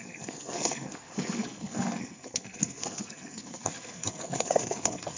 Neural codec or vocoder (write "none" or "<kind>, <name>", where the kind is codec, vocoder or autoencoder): codec, SNAC